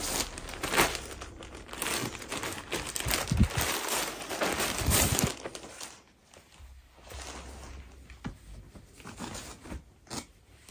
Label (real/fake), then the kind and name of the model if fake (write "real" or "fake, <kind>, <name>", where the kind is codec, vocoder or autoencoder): real